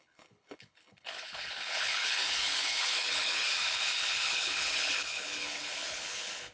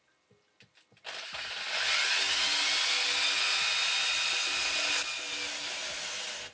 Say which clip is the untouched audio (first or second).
second